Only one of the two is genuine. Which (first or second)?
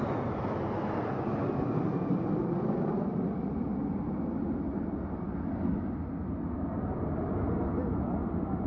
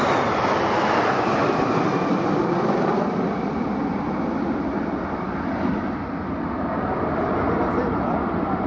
first